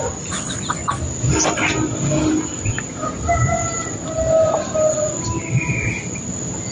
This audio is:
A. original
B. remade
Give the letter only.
A